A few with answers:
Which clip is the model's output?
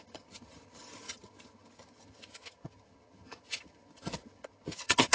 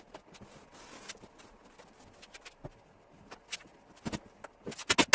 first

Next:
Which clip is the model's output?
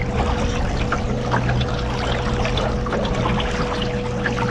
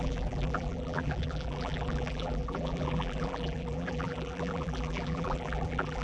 second